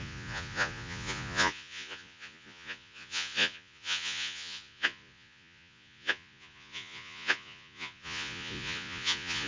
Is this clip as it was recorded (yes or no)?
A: no